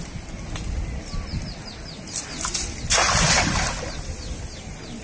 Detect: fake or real real